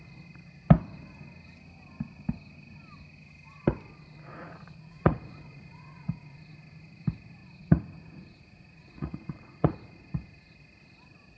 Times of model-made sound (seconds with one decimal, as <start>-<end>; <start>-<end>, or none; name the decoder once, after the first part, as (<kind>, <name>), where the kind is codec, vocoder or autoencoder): 4.3-6.4 (vocoder, Vocos); 7.4-10.5